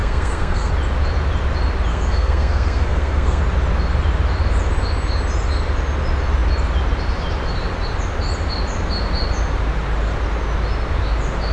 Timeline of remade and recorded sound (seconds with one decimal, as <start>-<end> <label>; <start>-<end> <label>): 0.0-0.7 remade; 0.7-1.9 recorded; 1.9-3.4 remade; 3.4-11.5 recorded